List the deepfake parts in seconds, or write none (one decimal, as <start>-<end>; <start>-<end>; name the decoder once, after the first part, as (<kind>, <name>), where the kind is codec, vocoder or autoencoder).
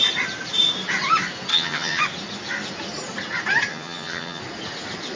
1.5-2.0 (vocoder, HiFi-GAN); 3.7-4.4